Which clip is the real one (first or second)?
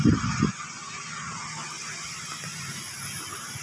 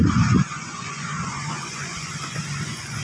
first